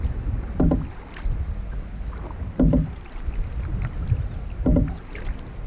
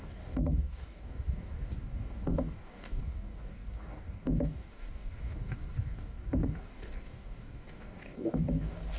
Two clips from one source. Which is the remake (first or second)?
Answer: second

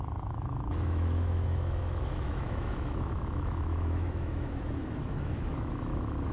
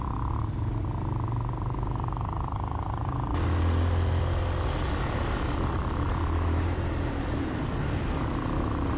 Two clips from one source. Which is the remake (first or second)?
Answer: first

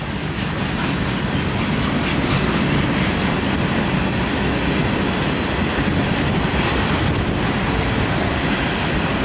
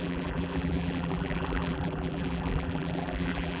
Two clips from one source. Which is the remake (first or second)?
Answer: second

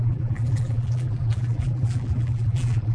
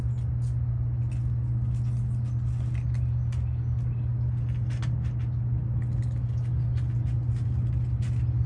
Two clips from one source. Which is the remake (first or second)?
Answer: first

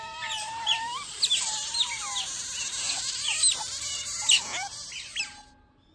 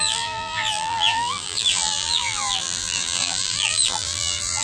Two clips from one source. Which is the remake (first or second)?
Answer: second